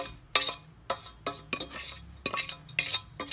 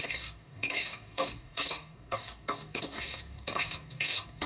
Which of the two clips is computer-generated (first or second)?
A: second